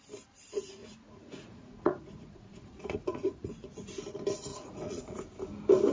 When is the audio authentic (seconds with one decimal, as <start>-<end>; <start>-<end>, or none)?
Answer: 0.0-0.8; 3.9-4.5; 5.2-5.9